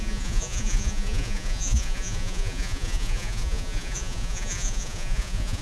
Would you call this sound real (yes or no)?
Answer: no